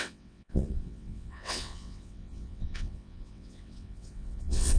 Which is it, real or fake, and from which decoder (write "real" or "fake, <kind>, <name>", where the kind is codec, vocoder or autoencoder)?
fake, vocoder, WaveNeXt